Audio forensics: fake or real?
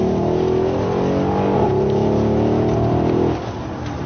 real